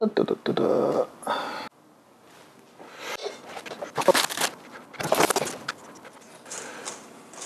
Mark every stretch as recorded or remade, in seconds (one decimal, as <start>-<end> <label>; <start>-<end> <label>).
0.0-7.5 recorded